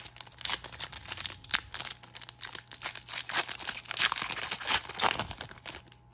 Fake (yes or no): no